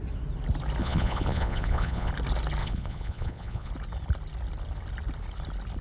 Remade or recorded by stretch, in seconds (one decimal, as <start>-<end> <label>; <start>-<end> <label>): 0.0-0.8 recorded; 0.8-2.1 remade; 2.1-2.6 recorded; 2.6-3.7 remade; 3.7-5.8 recorded